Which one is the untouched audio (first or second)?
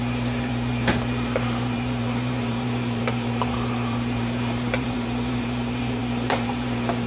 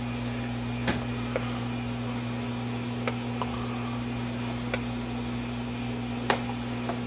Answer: second